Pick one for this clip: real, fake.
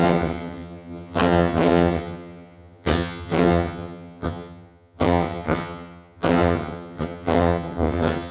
fake